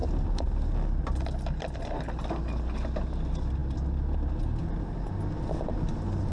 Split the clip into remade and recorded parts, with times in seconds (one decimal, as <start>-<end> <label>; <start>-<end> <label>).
0.0-6.3 recorded